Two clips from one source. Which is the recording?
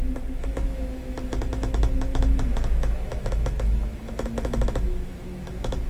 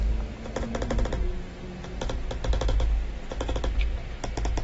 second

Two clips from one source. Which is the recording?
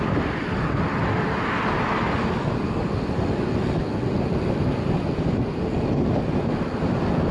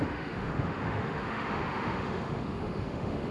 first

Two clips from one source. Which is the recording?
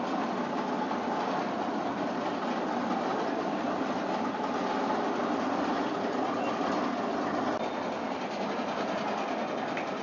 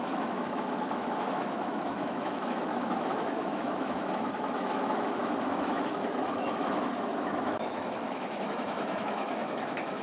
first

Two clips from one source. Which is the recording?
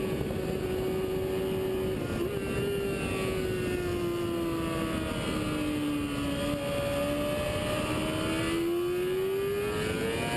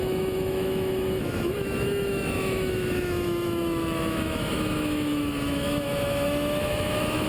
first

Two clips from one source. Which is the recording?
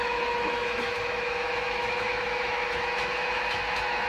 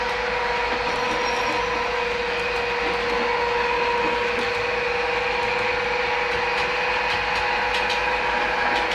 second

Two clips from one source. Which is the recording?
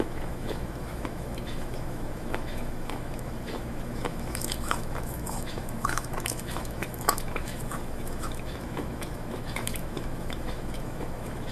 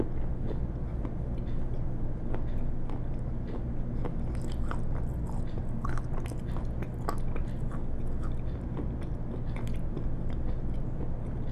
second